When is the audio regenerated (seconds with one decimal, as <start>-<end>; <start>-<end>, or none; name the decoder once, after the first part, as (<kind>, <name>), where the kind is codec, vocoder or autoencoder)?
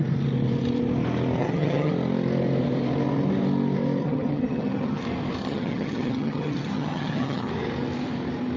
1.4-1.9 (vocoder, HiFi-GAN); 4.0-5.0; 5.4-7.5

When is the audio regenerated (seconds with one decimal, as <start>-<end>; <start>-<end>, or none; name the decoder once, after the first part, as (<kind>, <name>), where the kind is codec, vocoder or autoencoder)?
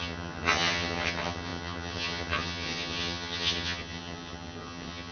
0.0-5.1 (vocoder, HiFi-GAN)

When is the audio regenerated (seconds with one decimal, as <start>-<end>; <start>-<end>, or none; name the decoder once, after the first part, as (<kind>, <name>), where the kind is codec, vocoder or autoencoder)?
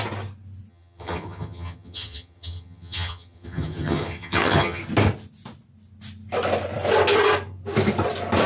0.7-4.8 (vocoder, HiFi-GAN)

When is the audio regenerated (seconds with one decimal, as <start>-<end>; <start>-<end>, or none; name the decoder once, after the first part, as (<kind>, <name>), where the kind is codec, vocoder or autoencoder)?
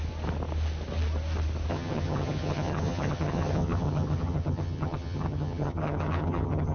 1.7-6.7 (vocoder, HiFi-GAN)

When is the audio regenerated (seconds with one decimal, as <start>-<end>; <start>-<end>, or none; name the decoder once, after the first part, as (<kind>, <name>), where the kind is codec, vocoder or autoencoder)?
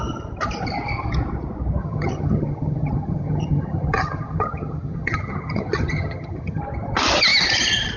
1.8-6.6 (vocoder, HiFi-GAN)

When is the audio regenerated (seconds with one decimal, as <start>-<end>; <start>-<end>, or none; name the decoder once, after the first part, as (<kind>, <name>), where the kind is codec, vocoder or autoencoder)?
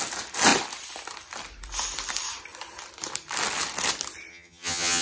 4.3-5.0 (vocoder, HiFi-GAN)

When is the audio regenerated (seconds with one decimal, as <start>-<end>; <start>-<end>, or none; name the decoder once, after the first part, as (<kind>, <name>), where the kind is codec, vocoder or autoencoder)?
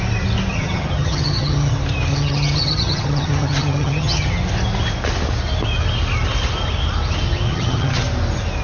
0.5-1.7 (vocoder, HiFi-GAN); 2.1-4.3; 7.5-8.0